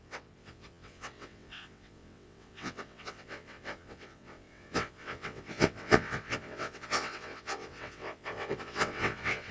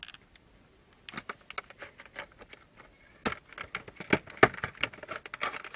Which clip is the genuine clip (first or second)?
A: second